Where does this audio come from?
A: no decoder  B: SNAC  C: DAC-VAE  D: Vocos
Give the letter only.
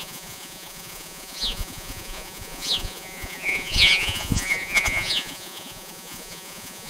D